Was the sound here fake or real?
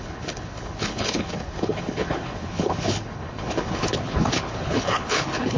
fake